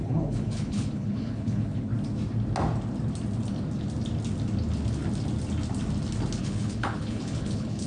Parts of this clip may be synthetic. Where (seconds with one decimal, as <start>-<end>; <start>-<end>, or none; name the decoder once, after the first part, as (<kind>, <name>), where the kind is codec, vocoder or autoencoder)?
0.0-1.9 (codec, HILCodec); 6.4-7.9